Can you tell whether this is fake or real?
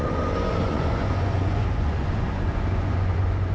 fake